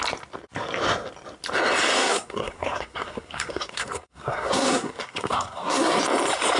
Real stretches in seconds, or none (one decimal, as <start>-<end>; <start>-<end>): 0.0-2.0; 6.0-6.6

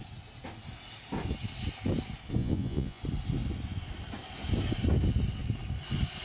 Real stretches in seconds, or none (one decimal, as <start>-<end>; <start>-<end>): 0.0-2.4; 3.0-6.2

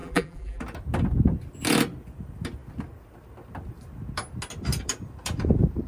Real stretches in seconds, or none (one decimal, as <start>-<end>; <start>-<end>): 0.6-5.9

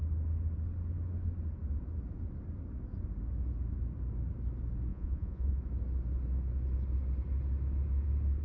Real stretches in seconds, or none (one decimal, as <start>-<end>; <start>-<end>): 0.0-4.9; 5.6-8.4